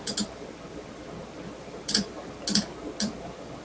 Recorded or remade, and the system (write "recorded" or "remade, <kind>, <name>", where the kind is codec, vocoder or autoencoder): recorded